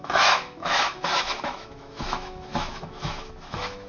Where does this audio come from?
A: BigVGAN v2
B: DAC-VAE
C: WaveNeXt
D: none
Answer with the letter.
B